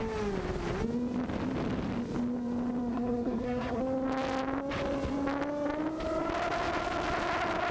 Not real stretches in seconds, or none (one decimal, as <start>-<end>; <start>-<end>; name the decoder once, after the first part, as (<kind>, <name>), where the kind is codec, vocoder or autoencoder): 2.9-3.8 (codec, SNAC)